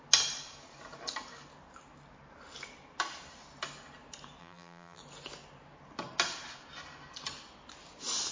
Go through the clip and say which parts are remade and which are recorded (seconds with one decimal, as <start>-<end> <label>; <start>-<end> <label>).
0.0-4.4 recorded; 4.4-5.0 remade; 5.0-8.3 recorded